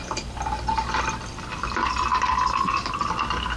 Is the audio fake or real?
real